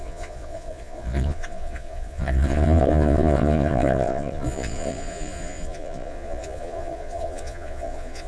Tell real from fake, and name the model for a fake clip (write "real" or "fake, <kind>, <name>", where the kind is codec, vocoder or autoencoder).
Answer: fake, vocoder, Vocos